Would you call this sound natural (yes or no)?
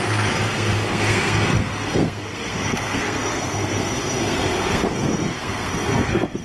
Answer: no